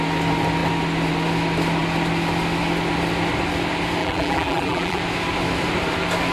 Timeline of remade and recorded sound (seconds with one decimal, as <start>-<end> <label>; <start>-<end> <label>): 0.0-4.0 recorded; 4.0-5.0 remade; 5.0-6.3 recorded